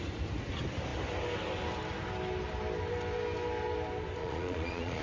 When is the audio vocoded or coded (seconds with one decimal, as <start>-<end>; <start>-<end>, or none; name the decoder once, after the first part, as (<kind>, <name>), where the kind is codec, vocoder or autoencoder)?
4.2-5.0 (vocoder, Vocos)